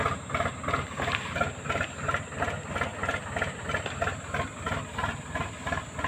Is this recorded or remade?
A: recorded